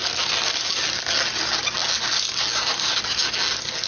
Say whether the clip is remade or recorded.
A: recorded